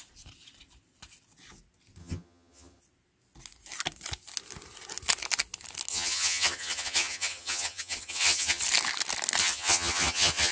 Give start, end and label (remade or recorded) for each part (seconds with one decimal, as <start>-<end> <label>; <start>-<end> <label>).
0.0-2.0 recorded; 2.0-2.8 remade; 2.8-5.9 recorded; 5.9-8.6 remade; 8.6-9.4 recorded; 9.4-10.5 remade